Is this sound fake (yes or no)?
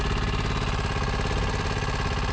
no